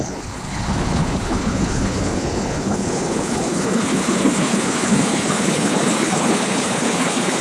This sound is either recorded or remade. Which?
remade